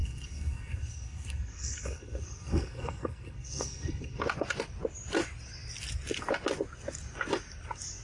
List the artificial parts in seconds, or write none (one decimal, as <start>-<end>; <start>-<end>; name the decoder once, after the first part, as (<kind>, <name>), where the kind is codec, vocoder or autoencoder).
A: 0.0-4.2 (codec, SNAC)